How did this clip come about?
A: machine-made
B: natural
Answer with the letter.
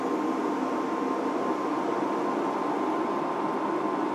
B